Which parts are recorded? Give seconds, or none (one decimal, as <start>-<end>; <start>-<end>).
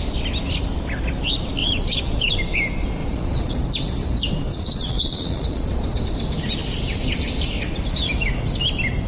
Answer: 0.0-1.6; 2.3-3.0; 3.6-4.5; 6.0-9.1